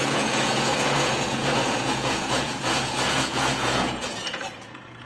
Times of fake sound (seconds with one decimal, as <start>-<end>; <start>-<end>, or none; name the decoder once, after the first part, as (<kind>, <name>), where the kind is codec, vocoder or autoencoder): 0.0-5.1 (vocoder, Vocos)